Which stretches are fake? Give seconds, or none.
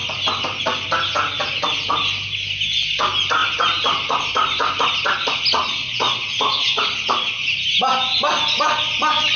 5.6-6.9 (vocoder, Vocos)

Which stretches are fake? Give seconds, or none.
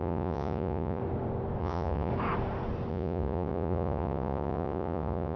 0.0-1.0 (vocoder, Vocos); 1.6-2.1; 2.9-5.4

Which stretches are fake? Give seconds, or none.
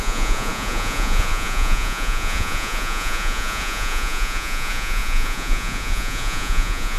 0.0-7.0 (vocoder, Vocos)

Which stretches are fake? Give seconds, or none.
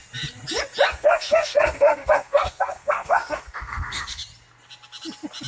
0.9-4.2 (codec, SNAC)